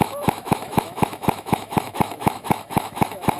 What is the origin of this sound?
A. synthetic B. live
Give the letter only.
A